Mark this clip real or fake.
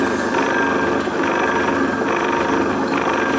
real